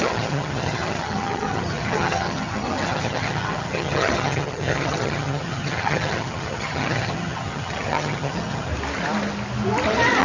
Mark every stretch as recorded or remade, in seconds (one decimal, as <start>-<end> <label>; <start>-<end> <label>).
0.0-8.7 remade; 8.7-10.2 recorded